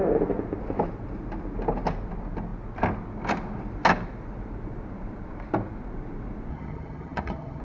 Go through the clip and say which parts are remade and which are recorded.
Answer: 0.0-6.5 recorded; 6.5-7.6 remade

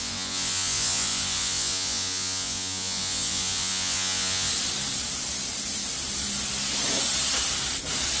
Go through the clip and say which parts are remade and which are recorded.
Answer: 0.0-4.5 remade; 4.5-8.2 recorded

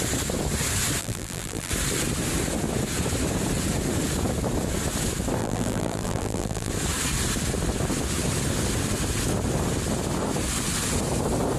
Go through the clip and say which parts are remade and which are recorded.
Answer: 0.0-1.0 recorded; 1.0-1.7 remade; 1.7-5.4 recorded; 5.4-6.7 remade; 6.7-11.6 recorded

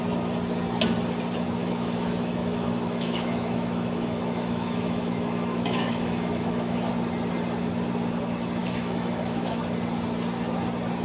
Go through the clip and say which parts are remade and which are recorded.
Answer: 0.0-1.6 recorded; 1.6-6.9 remade; 6.9-8.6 recorded; 8.6-9.6 remade; 9.6-11.0 recorded